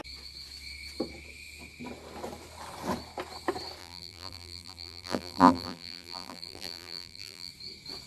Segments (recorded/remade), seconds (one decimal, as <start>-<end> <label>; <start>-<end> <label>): 0.0-3.8 recorded; 3.8-7.5 remade; 7.5-8.1 recorded